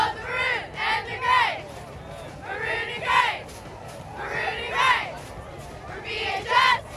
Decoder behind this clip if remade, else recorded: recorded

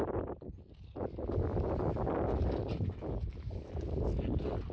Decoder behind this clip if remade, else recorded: recorded